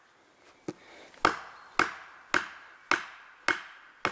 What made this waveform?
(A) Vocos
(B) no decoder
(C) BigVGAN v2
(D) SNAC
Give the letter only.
B